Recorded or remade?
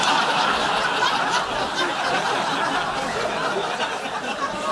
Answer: recorded